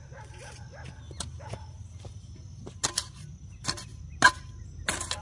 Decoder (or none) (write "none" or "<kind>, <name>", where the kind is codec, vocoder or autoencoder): none